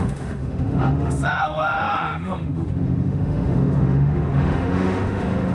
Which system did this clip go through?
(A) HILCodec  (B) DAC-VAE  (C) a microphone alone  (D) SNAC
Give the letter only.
B